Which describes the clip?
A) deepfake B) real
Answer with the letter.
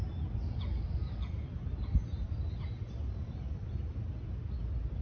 B